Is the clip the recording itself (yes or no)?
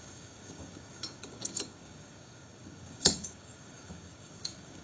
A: no